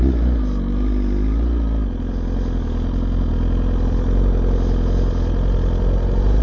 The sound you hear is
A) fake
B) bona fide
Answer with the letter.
B